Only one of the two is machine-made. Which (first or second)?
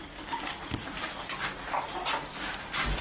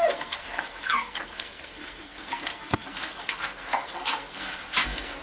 second